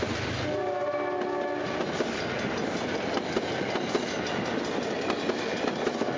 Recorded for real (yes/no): yes